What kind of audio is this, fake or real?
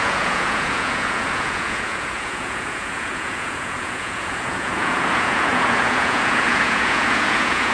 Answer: fake